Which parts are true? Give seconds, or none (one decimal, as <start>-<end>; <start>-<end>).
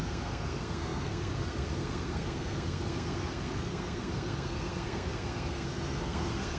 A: none